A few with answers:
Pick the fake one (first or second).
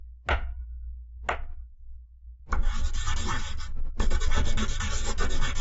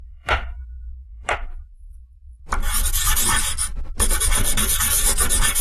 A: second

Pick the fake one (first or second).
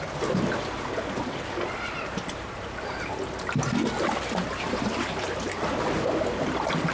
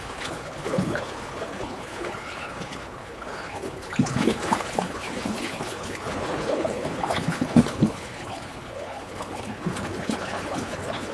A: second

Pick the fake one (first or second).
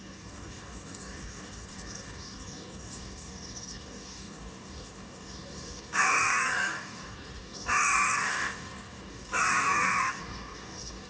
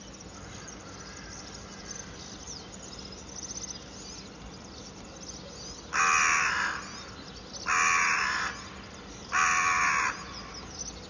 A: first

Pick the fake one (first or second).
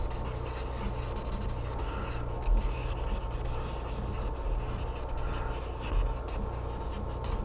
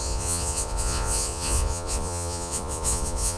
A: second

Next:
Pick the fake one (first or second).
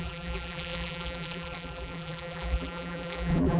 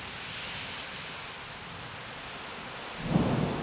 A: first